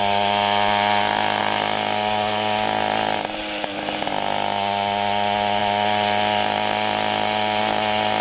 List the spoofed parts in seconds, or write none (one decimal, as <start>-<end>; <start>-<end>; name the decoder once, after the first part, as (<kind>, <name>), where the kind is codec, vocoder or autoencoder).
none